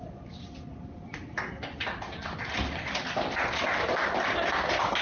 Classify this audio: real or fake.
real